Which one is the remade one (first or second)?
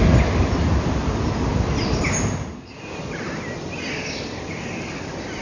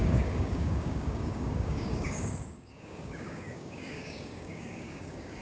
second